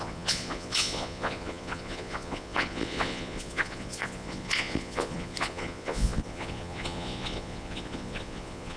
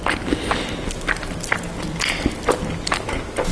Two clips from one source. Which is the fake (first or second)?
first